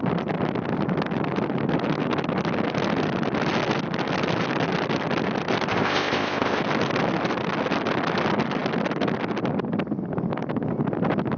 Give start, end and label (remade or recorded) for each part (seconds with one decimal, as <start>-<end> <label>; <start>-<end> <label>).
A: 0.0-5.7 recorded; 5.7-6.6 remade; 6.6-11.4 recorded